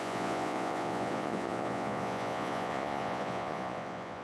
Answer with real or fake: fake